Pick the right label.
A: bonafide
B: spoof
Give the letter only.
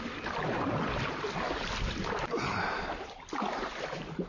B